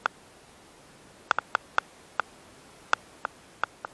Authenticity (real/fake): real